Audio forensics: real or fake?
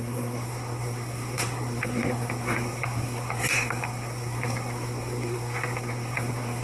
fake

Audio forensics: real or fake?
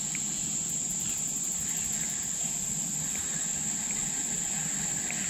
real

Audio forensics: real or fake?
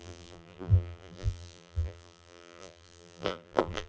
fake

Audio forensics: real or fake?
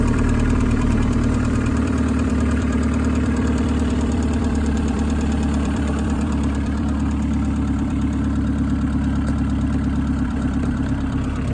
fake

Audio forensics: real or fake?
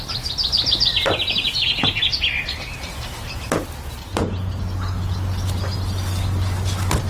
real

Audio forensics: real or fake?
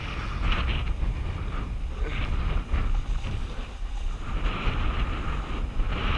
real